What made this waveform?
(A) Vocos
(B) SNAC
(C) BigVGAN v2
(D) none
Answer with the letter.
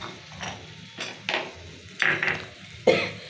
D